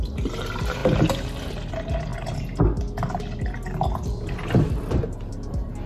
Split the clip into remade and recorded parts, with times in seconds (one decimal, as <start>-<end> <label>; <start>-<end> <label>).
0.0-5.9 recorded